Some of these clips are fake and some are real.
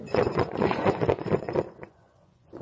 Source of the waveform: fake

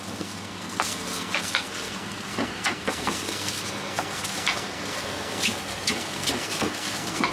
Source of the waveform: fake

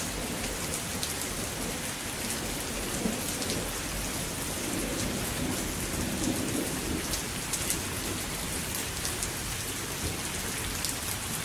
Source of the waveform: real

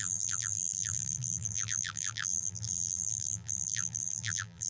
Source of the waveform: fake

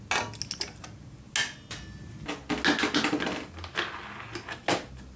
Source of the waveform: real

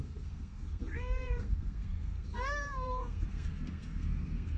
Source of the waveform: fake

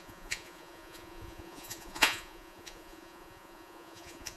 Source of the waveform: fake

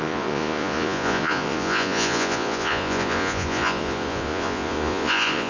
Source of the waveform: fake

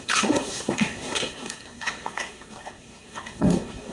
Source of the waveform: fake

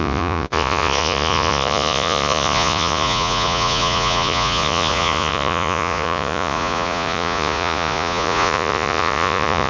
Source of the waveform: fake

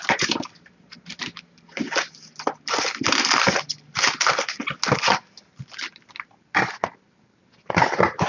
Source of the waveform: real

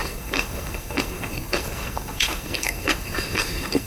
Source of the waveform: fake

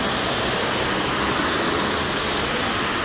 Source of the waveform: real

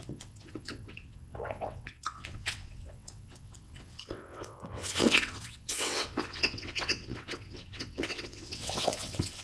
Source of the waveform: fake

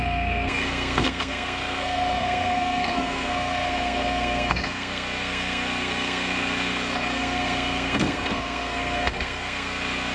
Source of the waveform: fake